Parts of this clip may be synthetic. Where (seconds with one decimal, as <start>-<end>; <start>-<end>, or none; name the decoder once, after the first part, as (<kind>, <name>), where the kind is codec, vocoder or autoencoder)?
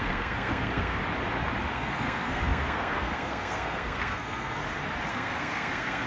0.0-1.0 (codec, SNAC); 1.7-4.6; 5.1-6.1